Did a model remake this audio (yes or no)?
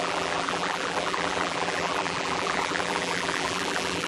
yes